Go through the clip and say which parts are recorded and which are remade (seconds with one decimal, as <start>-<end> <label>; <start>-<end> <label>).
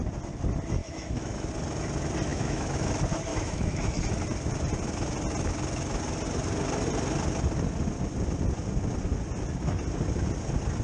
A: 0.0-0.8 recorded; 0.8-1.5 remade; 1.5-2.3 recorded; 2.3-2.9 remade; 2.9-3.3 recorded; 3.3-4.0 remade; 4.0-10.8 recorded